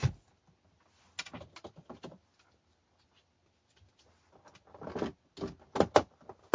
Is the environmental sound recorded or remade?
recorded